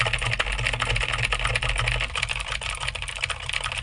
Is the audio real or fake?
real